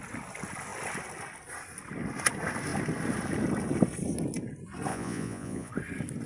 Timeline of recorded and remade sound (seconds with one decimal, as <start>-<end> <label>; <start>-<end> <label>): 0.0-4.9 recorded; 4.9-5.7 remade; 5.7-6.3 recorded